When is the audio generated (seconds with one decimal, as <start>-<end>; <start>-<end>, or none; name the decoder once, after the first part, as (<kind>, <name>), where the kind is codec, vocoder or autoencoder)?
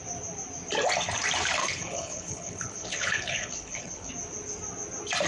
1.6-4.1 (codec, HILCodec)